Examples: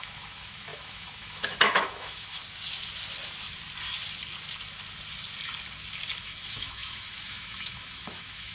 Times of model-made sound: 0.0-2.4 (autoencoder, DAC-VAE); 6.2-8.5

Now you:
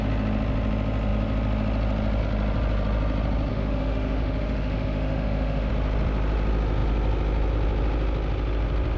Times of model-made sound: 3.5-5.7 (autoencoder, DAC-VAE)

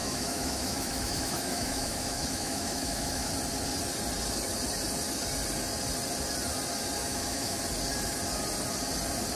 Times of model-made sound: 0.0-3.3 (autoencoder, DAC-VAE); 7.0-7.6

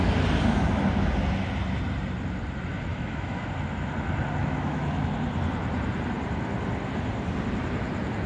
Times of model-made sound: 2.9-3.5 (autoencoder, DAC-VAE); 4.4-5.1

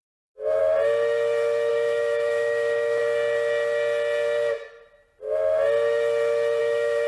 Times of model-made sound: 0.0-0.6 (autoencoder, DAC-VAE); 1.7-3.0; 6.6-7.1

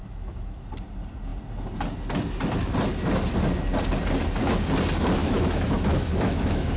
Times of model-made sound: 0.0-0.7 (autoencoder, DAC-VAE); 5.2-6.8